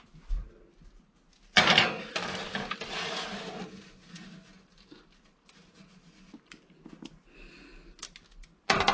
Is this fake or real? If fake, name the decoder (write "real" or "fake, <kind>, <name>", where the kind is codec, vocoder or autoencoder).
real